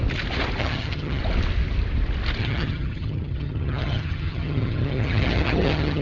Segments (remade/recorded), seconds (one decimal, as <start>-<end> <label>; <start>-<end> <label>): 0.0-0.6 recorded; 0.6-1.2 remade; 1.2-2.4 recorded; 2.4-6.0 remade